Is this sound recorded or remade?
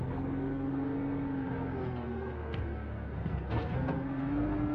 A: remade